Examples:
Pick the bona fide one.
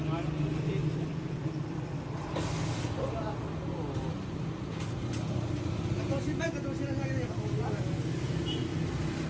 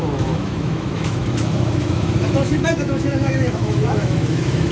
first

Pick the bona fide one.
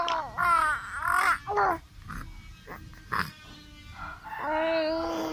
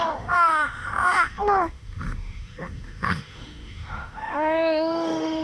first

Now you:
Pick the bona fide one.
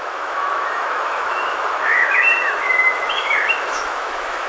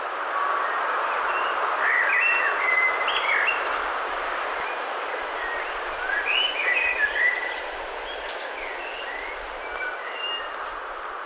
second